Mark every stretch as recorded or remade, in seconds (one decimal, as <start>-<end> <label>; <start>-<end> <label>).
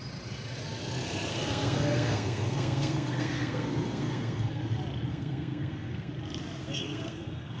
0.0-1.3 recorded; 1.3-4.6 remade; 4.6-5.1 recorded; 5.1-6.1 remade; 6.1-6.6 recorded; 6.6-7.6 remade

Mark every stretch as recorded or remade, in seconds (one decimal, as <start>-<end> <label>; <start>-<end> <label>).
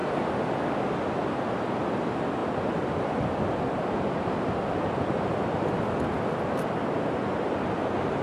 0.0-8.2 recorded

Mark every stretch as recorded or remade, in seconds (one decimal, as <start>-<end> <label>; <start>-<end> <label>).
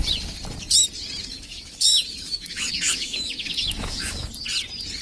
0.0-1.3 recorded; 1.3-4.3 remade; 4.3-5.0 recorded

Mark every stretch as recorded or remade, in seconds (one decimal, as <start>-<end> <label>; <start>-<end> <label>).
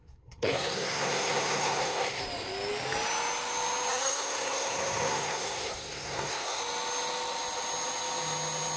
0.0-2.2 remade; 2.2-3.9 recorded; 3.9-6.6 remade; 6.6-8.8 recorded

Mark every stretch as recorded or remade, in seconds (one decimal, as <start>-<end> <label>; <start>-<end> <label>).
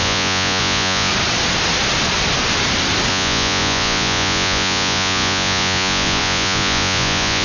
0.0-1.1 remade; 1.1-3.1 recorded; 3.1-7.4 remade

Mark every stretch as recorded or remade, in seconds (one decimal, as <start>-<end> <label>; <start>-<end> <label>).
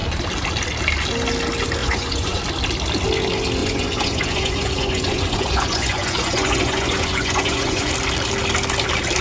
0.0-1.8 recorded; 1.8-2.4 remade; 2.4-3.6 recorded; 3.6-7.9 remade; 7.9-9.2 recorded